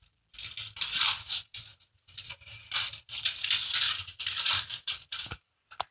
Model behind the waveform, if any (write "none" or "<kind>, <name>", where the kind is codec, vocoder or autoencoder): none